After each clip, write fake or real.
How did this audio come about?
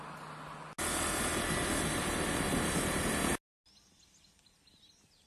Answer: real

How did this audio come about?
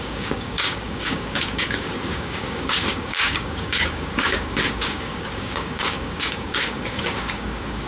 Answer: fake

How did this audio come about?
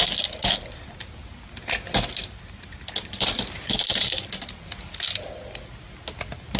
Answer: real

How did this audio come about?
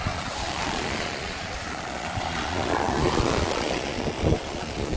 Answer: fake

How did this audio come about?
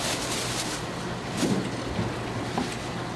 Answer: real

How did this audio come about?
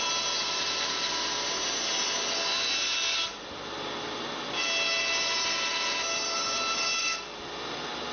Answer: real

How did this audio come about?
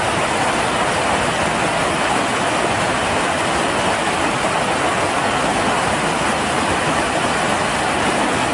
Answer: real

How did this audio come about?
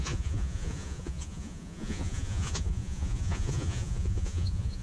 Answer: fake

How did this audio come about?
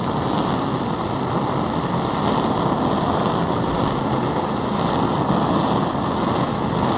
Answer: real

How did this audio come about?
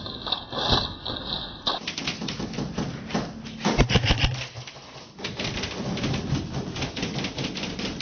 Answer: real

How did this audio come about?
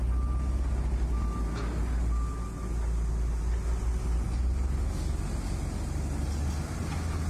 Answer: real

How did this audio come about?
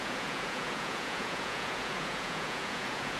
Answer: fake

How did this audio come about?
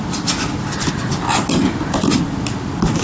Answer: real